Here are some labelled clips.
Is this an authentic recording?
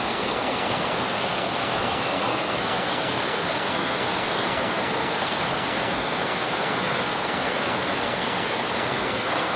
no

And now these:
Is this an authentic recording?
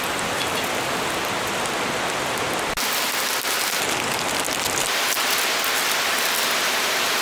yes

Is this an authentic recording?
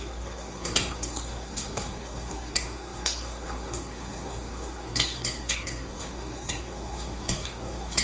no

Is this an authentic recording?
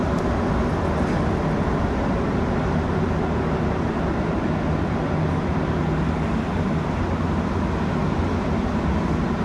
yes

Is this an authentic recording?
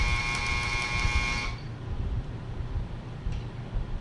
yes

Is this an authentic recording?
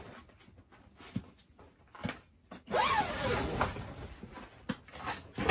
yes